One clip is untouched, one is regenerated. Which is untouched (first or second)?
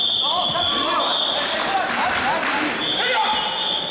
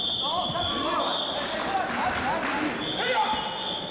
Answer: second